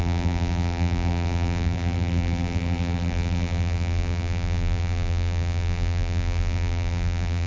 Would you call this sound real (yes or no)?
no